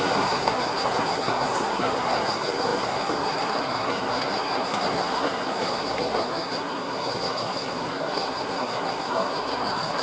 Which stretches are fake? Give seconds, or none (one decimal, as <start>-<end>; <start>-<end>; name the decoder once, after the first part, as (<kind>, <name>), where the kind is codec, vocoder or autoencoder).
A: 0.0-10.0 (codec, SNAC)